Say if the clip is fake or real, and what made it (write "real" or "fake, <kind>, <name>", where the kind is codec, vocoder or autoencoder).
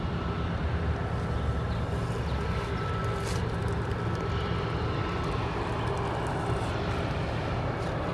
real